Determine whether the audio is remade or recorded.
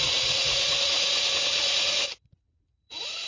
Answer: remade